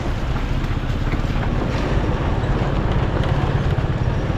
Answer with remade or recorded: recorded